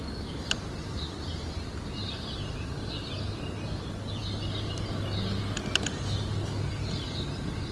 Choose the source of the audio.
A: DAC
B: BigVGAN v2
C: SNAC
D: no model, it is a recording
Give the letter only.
D